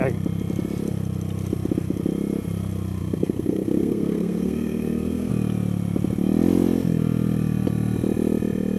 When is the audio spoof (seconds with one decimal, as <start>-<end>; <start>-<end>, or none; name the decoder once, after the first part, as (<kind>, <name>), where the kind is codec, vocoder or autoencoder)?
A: 3.0-5.3 (codec, SNAC)